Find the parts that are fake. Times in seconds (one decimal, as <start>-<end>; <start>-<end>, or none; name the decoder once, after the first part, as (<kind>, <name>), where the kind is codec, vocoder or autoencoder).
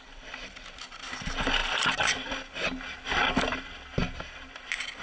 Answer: none